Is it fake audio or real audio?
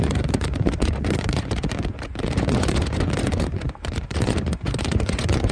fake